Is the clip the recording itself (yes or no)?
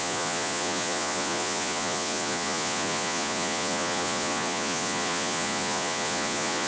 no